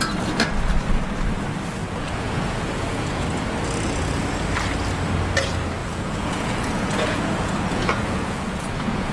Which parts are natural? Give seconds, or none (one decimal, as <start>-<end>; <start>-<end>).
0.0-1.8; 3.2-5.8